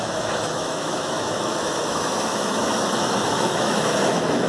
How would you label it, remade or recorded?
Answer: remade